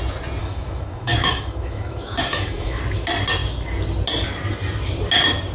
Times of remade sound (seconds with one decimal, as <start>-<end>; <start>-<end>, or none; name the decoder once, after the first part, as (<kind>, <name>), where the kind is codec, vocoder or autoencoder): 0.4-2.8 (autoencoder, DAC-VAE)